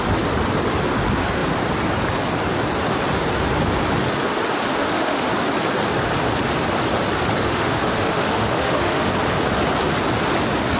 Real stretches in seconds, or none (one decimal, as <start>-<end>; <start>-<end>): 0.0-4.7; 5.3-7.4; 9.1-10.8